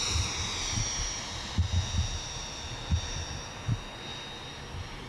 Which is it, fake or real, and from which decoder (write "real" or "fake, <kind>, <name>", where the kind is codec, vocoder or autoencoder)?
real